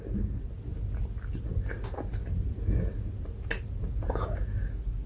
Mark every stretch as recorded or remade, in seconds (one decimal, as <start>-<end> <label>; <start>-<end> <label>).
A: 0.0-5.1 recorded